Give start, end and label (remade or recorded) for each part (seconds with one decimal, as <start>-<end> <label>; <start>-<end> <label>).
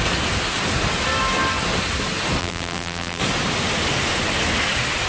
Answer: 0.0-2.4 recorded; 2.4-3.2 remade; 3.2-5.1 recorded